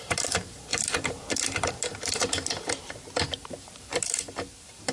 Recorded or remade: remade